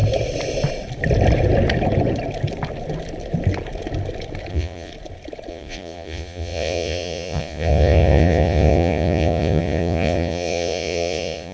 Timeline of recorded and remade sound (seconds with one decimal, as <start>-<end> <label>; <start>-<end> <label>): 0.0-4.5 recorded; 4.5-4.9 remade; 4.9-5.5 recorded; 5.5-11.5 remade

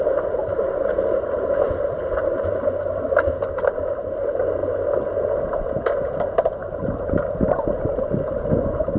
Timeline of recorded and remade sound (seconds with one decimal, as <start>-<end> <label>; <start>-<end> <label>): 0.0-9.0 recorded

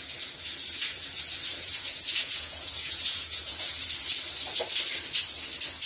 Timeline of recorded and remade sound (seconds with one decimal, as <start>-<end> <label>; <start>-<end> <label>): 0.0-1.5 recorded; 1.5-3.7 remade; 3.7-5.9 recorded

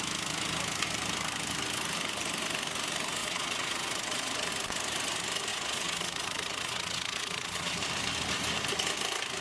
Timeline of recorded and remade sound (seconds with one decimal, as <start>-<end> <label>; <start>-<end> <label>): 0.0-3.2 recorded; 3.2-4.5 remade; 4.5-5.5 recorded; 5.5-7.8 remade; 7.8-9.4 recorded

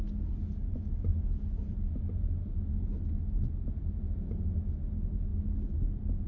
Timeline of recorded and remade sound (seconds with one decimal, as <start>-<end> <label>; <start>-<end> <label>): 0.0-6.3 recorded